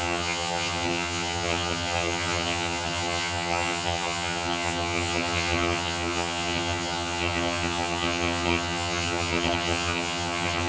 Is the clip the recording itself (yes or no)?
no